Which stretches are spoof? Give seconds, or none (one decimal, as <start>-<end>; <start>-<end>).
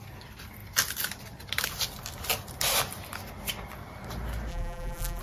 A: 4.5-5.2